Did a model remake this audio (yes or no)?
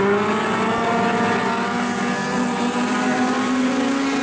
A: no